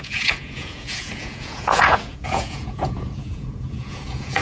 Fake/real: fake